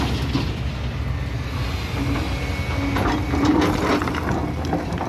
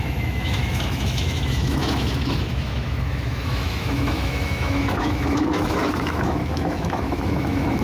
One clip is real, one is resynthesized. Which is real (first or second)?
first